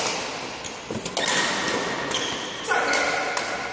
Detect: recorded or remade recorded